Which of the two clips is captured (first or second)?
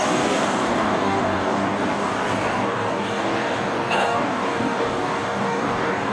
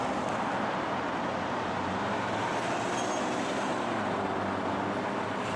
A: second